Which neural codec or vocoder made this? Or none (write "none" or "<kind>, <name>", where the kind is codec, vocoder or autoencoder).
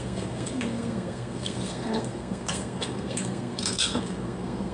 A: codec, SNAC